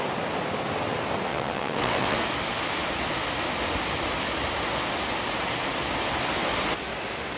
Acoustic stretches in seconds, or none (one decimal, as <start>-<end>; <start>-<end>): 0.0-1.3; 2.2-7.4